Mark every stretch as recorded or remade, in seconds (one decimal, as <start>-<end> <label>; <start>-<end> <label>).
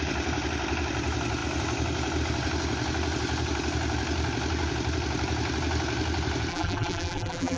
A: 0.0-6.5 recorded; 6.5-7.6 remade